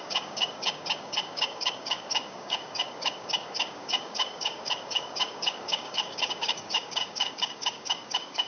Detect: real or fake fake